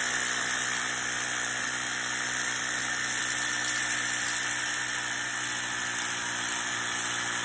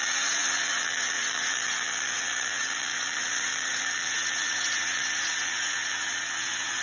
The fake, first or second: second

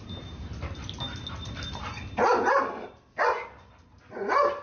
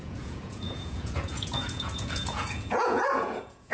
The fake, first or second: second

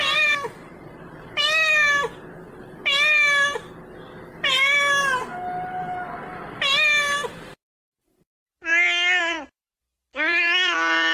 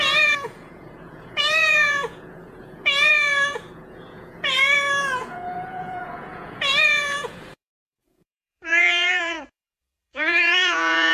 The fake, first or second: second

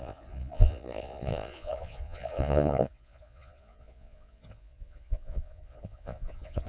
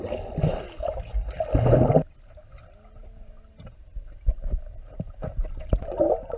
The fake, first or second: first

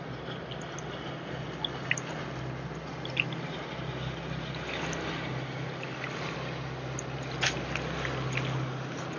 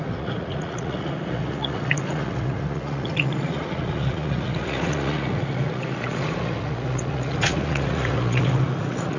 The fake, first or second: second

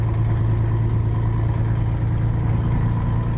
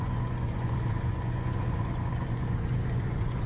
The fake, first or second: second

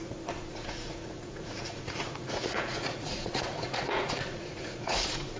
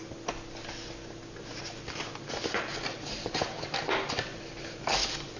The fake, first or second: first